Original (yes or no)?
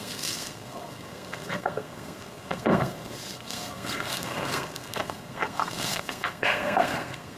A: no